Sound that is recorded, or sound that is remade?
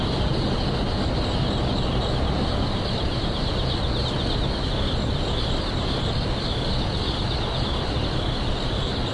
recorded